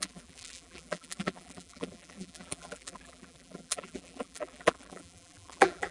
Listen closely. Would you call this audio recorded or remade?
remade